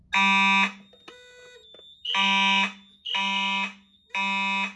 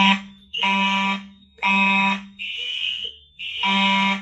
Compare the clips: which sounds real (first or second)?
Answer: first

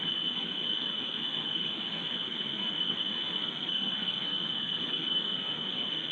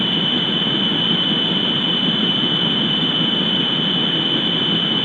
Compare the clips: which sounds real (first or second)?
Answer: second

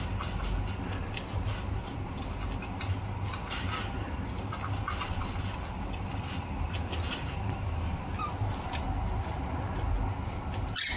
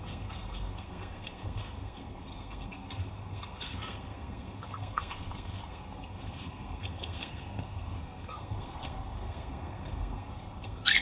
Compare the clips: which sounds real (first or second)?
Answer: first